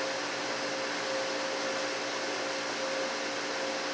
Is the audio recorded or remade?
recorded